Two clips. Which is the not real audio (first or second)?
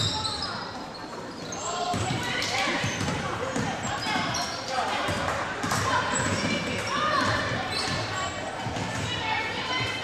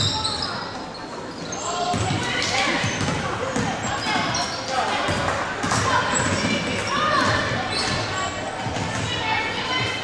first